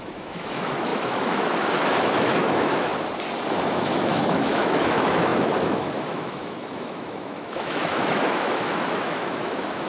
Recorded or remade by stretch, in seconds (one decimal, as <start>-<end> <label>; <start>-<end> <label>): 0.0-2.9 remade; 2.9-3.7 recorded; 3.7-9.9 remade